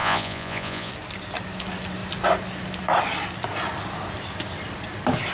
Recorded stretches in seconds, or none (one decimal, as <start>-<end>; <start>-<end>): 0.9-5.3